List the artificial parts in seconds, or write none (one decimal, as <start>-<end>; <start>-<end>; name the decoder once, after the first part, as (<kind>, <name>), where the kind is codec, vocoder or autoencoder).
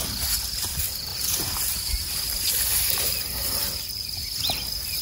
none